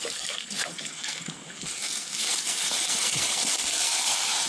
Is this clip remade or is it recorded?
remade